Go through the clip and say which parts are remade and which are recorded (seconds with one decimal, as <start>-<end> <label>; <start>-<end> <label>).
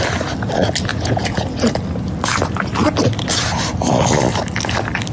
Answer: 0.0-0.9 recorded; 0.9-1.4 remade; 1.4-5.1 recorded